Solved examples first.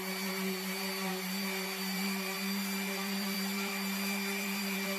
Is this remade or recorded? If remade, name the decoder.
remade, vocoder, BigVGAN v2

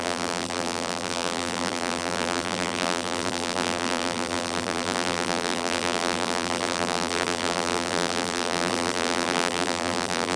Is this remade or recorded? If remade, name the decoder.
remade, vocoder, BigVGAN v2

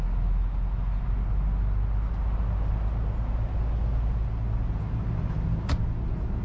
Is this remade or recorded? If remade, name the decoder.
recorded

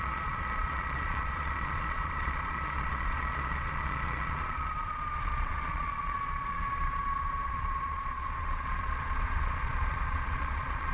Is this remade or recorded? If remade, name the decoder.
remade, vocoder, Vocos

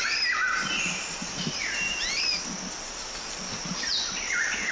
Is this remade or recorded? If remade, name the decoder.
recorded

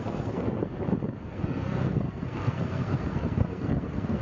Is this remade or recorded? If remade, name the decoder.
remade, codec, SNAC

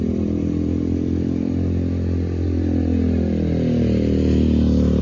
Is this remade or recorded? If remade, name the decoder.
recorded